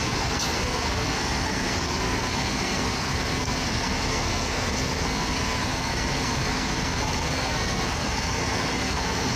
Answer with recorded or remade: remade